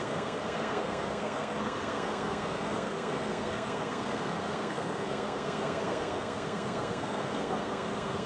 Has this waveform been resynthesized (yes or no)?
yes